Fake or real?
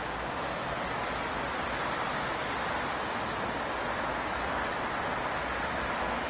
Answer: real